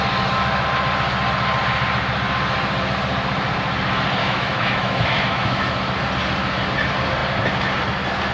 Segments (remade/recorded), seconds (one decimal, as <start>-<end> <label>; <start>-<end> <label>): 0.0-4.2 recorded; 4.2-5.7 remade; 5.7-8.3 recorded